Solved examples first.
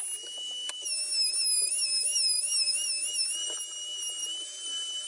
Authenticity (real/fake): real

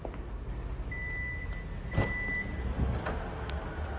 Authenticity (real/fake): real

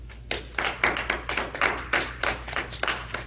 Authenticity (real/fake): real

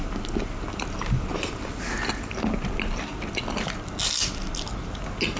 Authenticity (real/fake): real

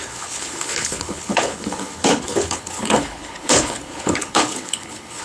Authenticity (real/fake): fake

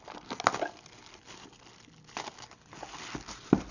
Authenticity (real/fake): real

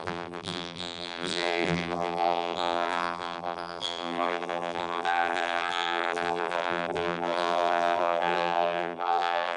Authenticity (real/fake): fake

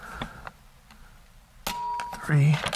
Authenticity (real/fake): real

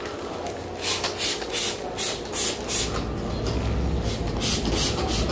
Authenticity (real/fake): real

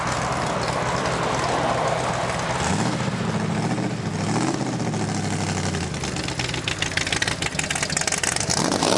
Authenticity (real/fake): real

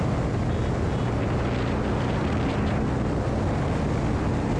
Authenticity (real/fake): real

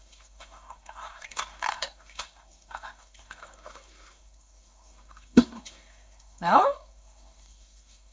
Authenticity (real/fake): fake